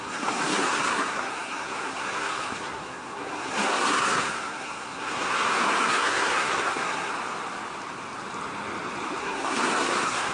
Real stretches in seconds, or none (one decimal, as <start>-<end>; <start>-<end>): 7.1-9.2